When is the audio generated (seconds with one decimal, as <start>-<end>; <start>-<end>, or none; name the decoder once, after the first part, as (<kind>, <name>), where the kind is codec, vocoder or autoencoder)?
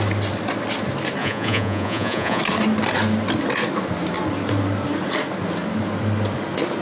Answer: 1.2-2.4 (vocoder, Vocos)